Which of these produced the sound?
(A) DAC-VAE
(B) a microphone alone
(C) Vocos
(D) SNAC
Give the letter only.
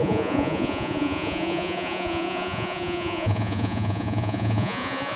C